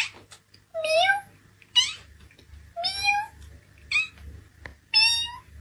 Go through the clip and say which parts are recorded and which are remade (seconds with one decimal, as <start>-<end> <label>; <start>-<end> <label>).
0.0-4.7 remade; 4.7-5.6 recorded